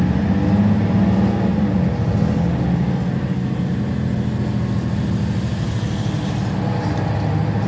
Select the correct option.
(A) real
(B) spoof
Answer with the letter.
A